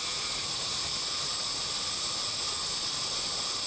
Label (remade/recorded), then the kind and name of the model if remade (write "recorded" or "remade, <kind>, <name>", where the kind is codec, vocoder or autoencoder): recorded